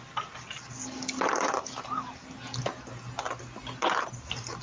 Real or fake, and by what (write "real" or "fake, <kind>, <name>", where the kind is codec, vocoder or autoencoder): real